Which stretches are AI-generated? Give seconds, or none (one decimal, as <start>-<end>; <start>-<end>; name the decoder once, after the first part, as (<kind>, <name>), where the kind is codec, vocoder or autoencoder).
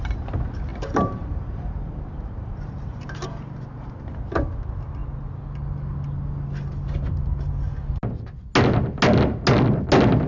0.7-4.1 (vocoder, BigVGAN v2)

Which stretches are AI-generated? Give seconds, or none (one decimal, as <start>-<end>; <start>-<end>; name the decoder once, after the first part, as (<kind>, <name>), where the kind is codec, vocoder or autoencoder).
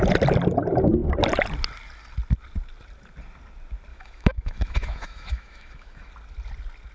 3.9-6.1 (autoencoder, DAC-VAE)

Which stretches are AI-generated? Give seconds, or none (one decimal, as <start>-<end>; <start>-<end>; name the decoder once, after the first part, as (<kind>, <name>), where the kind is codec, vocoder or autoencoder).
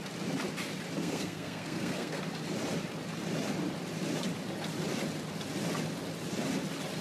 1.0-2.2 (codec, SNAC)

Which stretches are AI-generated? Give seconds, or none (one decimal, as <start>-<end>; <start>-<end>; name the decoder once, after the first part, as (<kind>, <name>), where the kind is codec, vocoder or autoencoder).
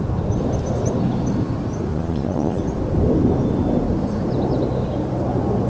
1.9-2.6 (vocoder, Vocos)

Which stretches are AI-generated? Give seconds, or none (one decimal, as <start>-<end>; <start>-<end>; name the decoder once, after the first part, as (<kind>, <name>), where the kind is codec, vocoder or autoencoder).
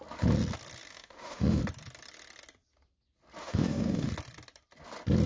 0.9-1.6 (autoencoder, DAC-VAE); 3.4-4.1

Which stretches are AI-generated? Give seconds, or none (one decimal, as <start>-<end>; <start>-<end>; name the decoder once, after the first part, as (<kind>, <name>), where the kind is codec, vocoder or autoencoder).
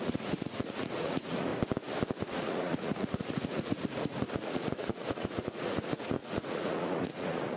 0.0-1.5 (vocoder, Vocos); 2.2-7.6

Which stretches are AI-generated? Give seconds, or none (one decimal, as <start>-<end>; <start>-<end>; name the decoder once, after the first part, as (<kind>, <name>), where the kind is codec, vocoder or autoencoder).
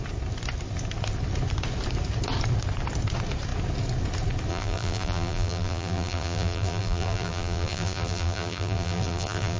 4.5-9.6 (vocoder, BigVGAN v2)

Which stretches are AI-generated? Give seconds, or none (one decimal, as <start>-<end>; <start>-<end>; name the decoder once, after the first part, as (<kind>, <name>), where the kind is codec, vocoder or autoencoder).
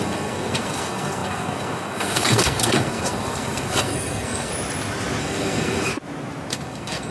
0.0-4.5 (codec, SNAC); 5.2-5.9; 6.5-7.1